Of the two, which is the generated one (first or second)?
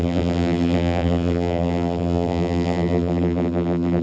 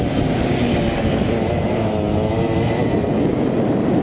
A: first